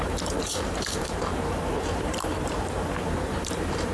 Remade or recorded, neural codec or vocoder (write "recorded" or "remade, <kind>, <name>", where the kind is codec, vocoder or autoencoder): remade, vocoder, BigVGAN v2